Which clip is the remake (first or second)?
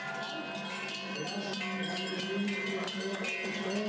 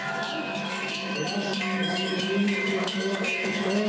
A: second